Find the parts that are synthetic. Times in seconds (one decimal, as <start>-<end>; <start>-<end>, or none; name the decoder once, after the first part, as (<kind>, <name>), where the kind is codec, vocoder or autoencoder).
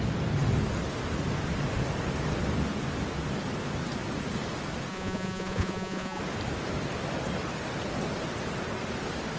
4.9-6.2 (vocoder, Vocos)